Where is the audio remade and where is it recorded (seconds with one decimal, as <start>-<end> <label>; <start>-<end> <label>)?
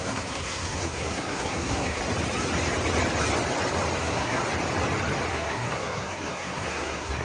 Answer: 0.0-2.0 remade; 2.0-4.0 recorded; 4.0-4.4 remade; 4.4-5.3 recorded; 5.3-7.2 remade